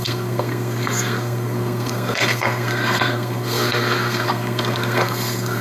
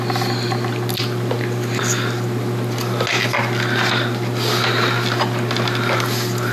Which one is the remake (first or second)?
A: first